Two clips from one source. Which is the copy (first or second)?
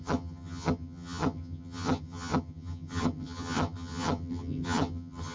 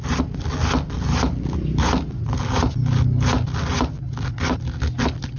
first